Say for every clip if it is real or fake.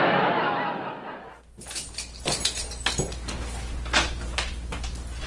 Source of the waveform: real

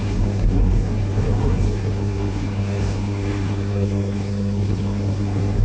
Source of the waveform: fake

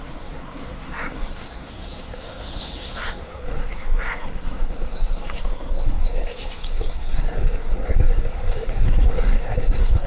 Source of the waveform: fake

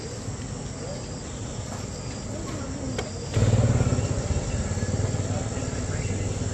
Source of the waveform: real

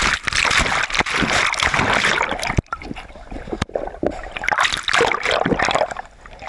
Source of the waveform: real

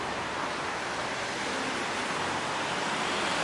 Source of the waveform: real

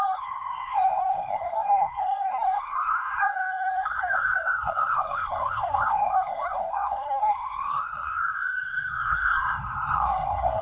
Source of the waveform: fake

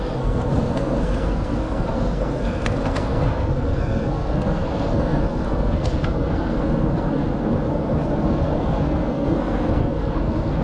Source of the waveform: fake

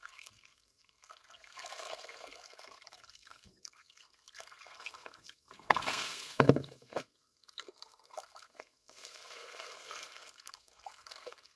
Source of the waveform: fake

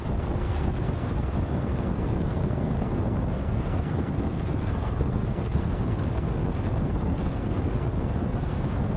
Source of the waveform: fake